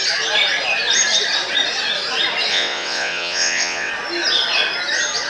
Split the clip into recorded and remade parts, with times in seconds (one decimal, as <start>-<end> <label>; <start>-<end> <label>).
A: 0.0-2.5 recorded; 2.5-3.9 remade; 3.9-5.3 recorded